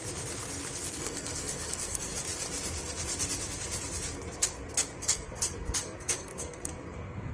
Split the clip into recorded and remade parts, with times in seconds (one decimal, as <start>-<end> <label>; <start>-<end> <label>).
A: 0.0-0.9 recorded; 0.9-2.1 remade; 2.1-5.0 recorded; 5.0-7.3 remade